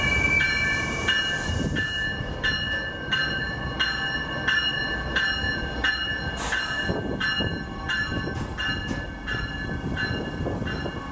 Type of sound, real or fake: real